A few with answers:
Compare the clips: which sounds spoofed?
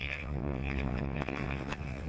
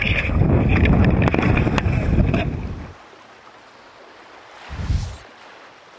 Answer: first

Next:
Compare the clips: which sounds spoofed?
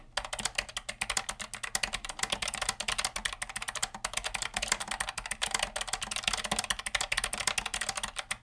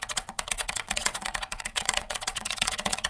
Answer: second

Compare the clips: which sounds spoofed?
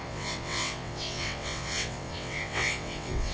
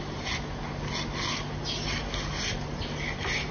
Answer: first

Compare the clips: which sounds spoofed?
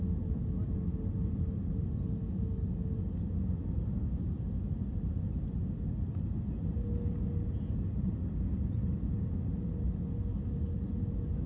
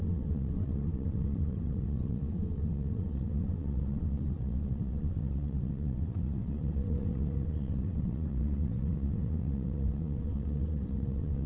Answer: second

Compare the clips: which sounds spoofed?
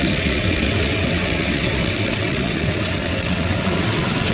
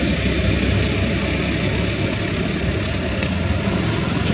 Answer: first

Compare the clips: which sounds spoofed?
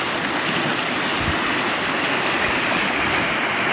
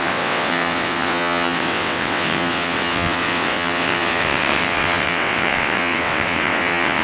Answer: second